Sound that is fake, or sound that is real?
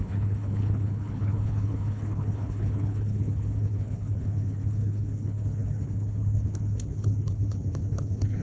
fake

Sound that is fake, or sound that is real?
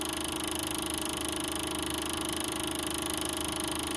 real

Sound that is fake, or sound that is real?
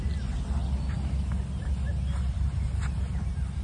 real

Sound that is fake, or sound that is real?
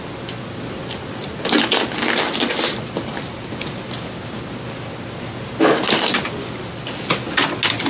real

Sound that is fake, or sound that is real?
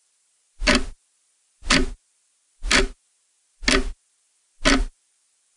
real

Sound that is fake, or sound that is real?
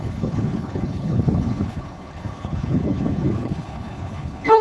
fake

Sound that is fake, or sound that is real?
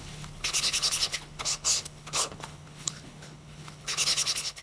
fake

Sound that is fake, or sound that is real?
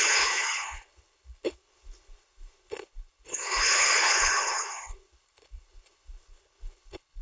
fake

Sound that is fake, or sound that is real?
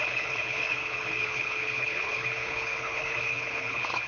fake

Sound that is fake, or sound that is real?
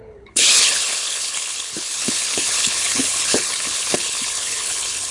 fake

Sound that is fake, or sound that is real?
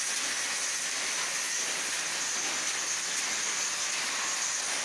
real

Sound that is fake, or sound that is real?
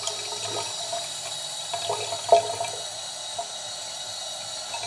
real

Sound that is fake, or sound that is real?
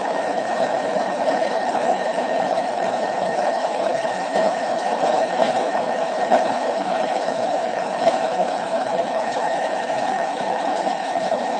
fake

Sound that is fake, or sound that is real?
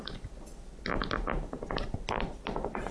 real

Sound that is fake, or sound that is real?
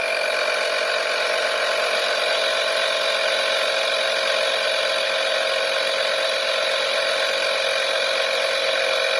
real